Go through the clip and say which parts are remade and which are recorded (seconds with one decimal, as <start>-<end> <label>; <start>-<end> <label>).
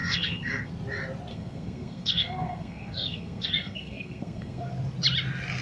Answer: 0.0-0.7 remade; 0.7-1.3 recorded; 1.3-4.7 remade; 4.7-5.6 recorded